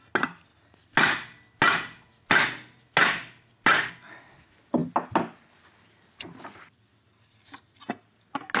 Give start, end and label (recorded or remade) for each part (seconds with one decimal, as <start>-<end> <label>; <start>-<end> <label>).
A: 0.0-8.6 recorded